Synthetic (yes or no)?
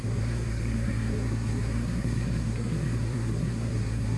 yes